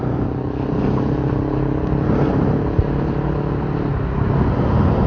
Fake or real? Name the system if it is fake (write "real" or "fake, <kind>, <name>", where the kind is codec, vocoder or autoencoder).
real